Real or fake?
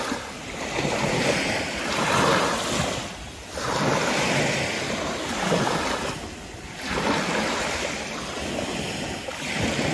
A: real